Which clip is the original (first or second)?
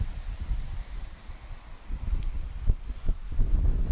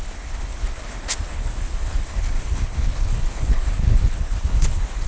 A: first